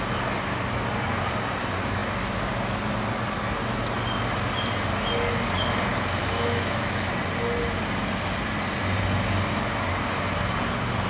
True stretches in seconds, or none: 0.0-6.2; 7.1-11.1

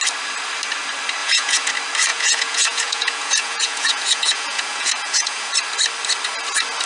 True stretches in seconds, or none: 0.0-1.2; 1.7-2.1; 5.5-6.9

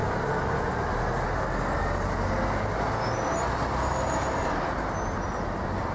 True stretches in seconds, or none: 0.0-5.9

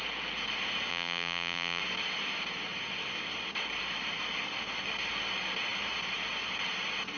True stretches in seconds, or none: 0.0-0.9; 1.8-7.2